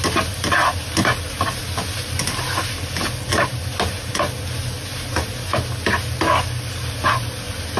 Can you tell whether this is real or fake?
real